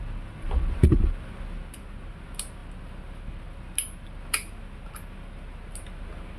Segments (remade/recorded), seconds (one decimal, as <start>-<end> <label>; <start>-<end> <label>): 0.0-6.4 recorded